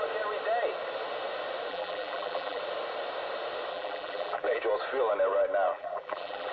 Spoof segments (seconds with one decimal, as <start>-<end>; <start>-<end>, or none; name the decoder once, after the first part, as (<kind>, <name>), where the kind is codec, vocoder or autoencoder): 1.7-2.6 (vocoder, BigVGAN v2); 3.7-4.6; 5.7-6.5